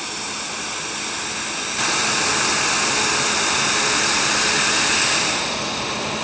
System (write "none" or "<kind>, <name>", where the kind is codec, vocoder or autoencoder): none